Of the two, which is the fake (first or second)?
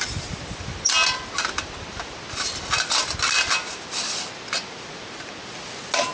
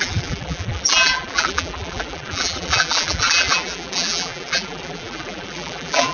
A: second